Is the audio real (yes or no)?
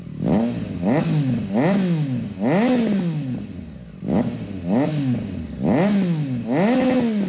yes